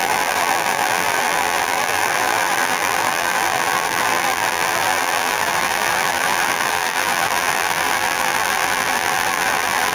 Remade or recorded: remade